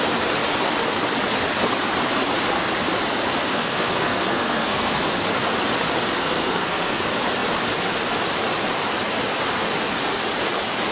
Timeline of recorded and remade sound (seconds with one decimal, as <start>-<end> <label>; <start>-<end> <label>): 0.0-3.5 recorded; 3.5-5.0 remade; 5.0-6.2 recorded; 6.2-7.0 remade; 7.0-10.9 recorded